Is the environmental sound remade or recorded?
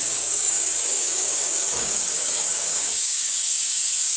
remade